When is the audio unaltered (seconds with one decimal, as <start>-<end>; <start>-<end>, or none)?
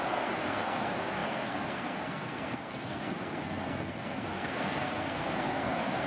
none